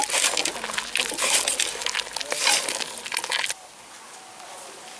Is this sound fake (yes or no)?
no